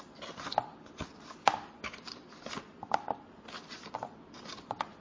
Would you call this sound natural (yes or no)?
no